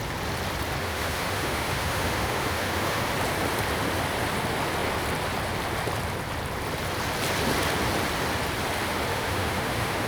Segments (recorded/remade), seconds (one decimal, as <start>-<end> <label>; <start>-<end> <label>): 0.0-0.8 recorded; 0.8-3.1 remade; 3.1-9.1 recorded; 9.1-10.1 remade